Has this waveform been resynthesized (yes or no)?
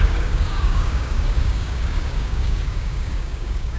yes